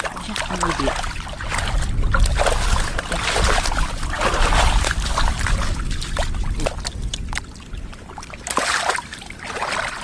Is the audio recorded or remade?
recorded